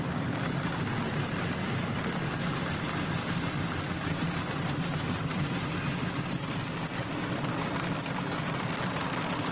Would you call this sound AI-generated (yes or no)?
no